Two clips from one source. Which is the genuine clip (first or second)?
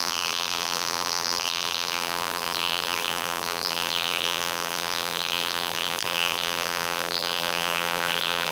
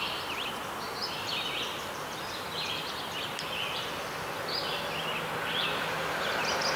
second